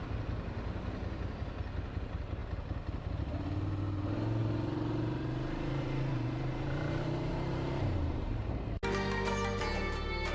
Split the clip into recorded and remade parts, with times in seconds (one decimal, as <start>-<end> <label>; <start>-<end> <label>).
0.0-4.4 recorded; 4.4-8.4 remade; 8.4-10.3 recorded